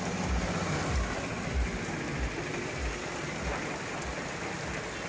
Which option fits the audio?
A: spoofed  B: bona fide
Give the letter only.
B